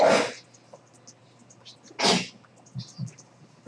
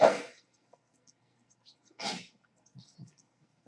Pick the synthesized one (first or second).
second